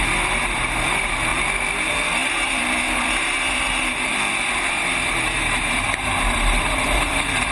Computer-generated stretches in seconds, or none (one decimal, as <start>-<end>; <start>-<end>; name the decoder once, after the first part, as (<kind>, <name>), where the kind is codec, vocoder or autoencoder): 0.0-1.3 (vocoder, BigVGAN v2); 1.9-4.1; 4.7-7.5